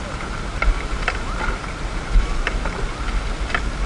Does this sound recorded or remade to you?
recorded